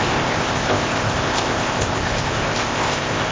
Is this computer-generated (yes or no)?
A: yes